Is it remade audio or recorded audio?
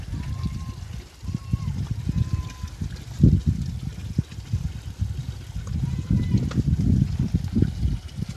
recorded